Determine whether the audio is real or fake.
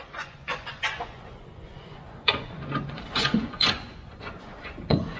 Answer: fake